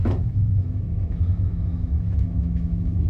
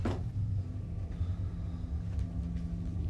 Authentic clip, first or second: second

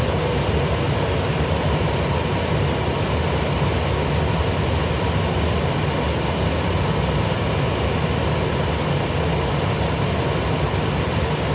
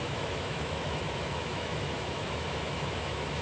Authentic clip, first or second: first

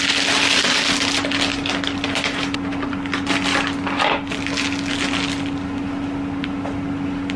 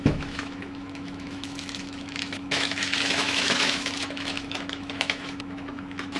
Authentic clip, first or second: first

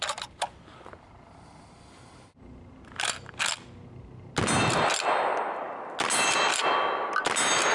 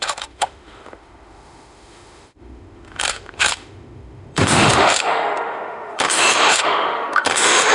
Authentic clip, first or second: first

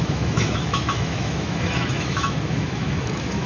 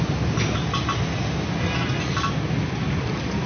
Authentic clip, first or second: second